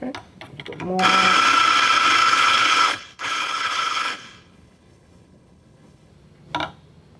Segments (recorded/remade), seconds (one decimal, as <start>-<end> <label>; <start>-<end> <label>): 0.0-2.2 recorded; 2.2-6.1 remade; 6.1-7.2 recorded